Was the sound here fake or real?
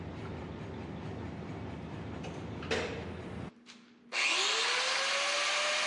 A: real